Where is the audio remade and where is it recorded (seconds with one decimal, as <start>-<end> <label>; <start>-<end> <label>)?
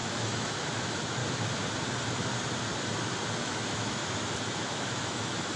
0.0-1.2 remade; 1.2-3.4 recorded; 3.4-4.0 remade; 4.0-4.6 recorded; 4.6-5.6 remade